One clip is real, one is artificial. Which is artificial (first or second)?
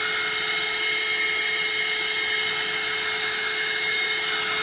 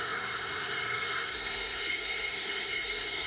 second